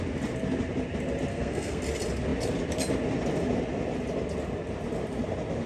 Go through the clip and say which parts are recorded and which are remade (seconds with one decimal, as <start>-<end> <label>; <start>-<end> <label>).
0.0-1.3 recorded; 1.3-1.8 remade; 1.8-5.7 recorded